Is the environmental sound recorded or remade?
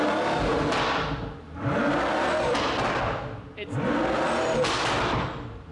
recorded